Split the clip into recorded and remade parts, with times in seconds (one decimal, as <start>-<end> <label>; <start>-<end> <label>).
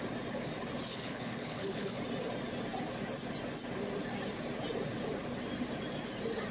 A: 0.0-0.9 recorded; 0.9-2.0 remade; 2.0-6.5 recorded